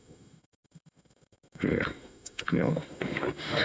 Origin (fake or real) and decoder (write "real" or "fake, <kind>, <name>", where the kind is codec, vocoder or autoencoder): fake, autoencoder, DAC-VAE